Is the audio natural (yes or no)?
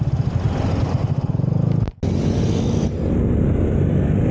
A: yes